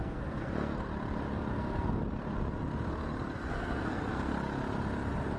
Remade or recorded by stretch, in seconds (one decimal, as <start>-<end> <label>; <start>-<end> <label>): 0.0-0.9 remade; 0.9-1.5 recorded; 1.5-2.0 remade; 2.0-3.5 recorded; 3.5-4.3 remade; 4.3-5.4 recorded